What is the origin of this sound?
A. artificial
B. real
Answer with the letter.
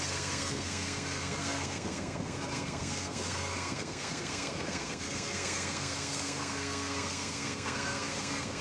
A